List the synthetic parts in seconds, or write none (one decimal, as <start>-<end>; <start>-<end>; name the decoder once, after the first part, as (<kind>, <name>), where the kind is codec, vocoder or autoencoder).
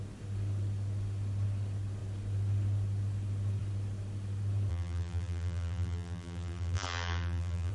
4.7-7.7 (vocoder, BigVGAN v2)